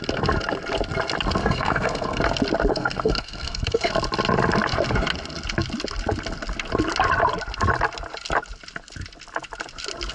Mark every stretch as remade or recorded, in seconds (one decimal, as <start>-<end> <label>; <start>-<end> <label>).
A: 0.0-1.4 recorded; 1.4-2.2 remade; 2.2-2.7 recorded; 2.7-3.9 remade; 3.9-10.1 recorded